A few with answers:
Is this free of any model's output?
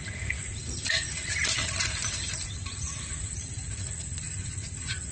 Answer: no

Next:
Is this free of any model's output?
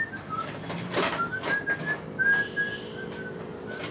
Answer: yes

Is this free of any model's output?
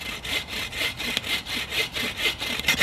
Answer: yes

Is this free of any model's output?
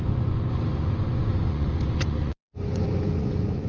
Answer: no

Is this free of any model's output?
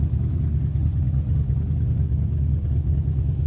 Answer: yes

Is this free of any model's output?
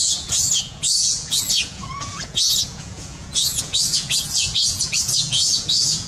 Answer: no